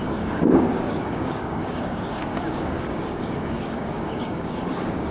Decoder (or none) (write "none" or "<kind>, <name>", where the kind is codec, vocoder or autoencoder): codec, DAC